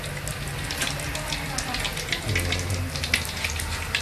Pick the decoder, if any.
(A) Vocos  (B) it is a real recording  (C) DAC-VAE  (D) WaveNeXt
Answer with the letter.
B